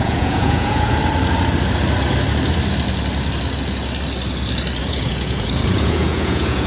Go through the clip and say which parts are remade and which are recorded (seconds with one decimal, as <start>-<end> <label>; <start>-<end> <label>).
0.0-1.0 remade; 1.0-4.8 recorded; 4.8-6.7 remade